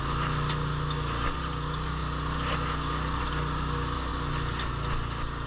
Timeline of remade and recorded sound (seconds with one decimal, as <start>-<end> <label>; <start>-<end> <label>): 0.0-5.5 recorded